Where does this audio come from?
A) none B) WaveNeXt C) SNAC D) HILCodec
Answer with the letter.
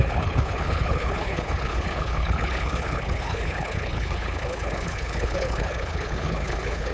D